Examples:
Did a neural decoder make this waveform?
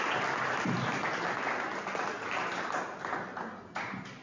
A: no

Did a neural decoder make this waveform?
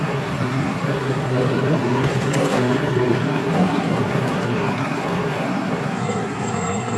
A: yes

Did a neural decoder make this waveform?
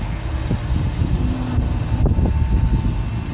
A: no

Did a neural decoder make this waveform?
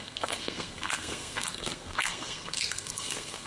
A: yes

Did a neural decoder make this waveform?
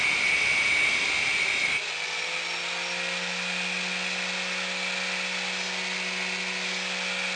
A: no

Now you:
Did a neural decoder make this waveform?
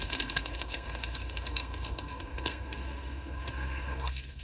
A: yes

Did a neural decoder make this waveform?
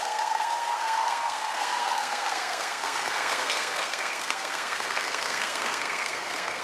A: yes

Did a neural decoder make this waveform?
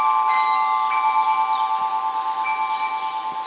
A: no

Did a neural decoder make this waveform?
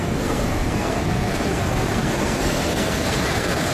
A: yes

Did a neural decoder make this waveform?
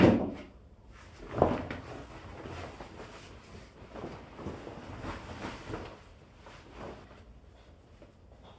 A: no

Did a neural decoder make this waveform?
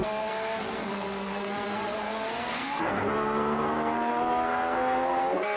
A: yes